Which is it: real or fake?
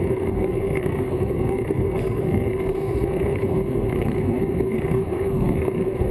fake